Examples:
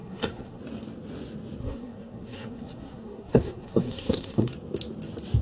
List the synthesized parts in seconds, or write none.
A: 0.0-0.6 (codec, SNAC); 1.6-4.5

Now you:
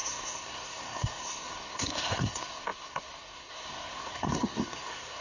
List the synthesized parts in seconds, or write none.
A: 0.0-5.2 (codec, SNAC)

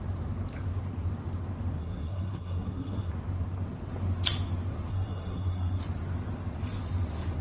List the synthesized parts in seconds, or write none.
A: 1.8-3.1 (codec, SNAC); 4.9-5.8

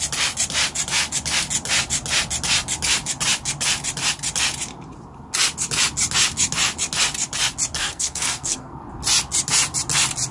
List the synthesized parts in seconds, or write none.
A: 7.8-8.8 (codec, SNAC)

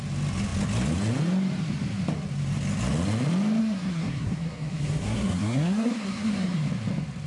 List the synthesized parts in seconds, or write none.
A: 3.6-6.6 (codec, SNAC)

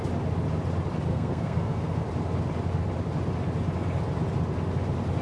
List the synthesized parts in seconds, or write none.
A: 1.1-2.0 (codec, SNAC)